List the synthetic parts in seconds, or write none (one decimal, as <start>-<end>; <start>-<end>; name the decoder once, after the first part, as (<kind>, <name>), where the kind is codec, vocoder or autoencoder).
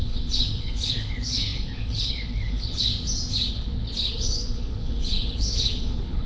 0.0-2.9 (codec, HILCodec); 3.5-6.3